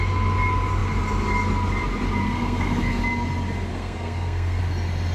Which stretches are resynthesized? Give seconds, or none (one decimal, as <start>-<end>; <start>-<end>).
2.2-3.0; 3.7-4.6